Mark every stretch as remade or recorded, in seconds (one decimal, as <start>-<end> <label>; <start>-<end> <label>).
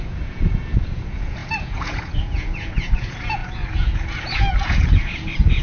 0.0-5.6 remade